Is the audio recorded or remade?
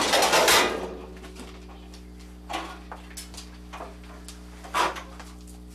recorded